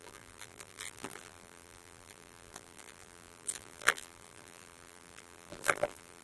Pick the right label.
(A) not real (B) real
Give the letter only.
A